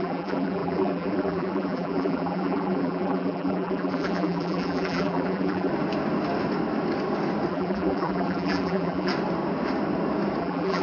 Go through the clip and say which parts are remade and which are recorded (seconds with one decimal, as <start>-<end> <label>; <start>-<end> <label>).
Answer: 0.0-5.7 remade; 5.7-7.5 recorded; 7.5-9.1 remade; 9.1-10.4 recorded; 10.4-10.8 remade